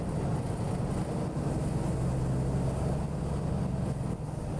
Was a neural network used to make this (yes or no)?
no